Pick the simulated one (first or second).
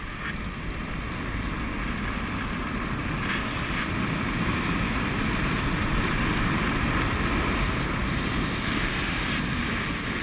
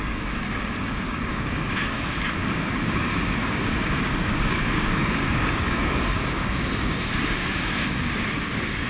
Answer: second